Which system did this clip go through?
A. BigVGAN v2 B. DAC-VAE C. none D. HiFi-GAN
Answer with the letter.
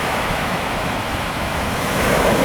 B